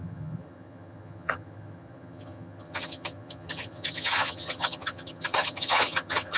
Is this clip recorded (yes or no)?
no